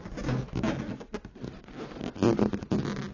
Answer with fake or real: real